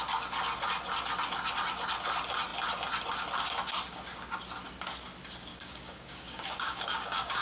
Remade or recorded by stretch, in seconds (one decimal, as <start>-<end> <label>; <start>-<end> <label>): 0.0-5.5 recorded; 5.5-7.4 remade